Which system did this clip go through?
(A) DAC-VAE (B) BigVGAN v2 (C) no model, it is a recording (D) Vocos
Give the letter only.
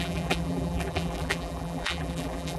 B